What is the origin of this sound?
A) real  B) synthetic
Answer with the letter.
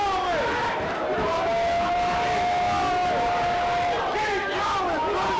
A